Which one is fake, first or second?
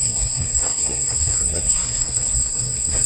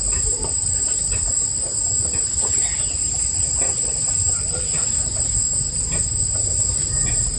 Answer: first